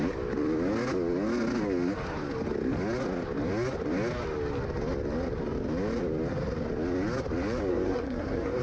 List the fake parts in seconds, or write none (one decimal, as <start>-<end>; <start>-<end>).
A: 7.7-8.6

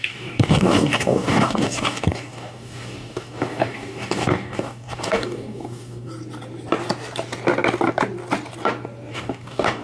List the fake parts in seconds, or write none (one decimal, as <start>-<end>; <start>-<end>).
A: 0.0-6.1; 9.1-9.8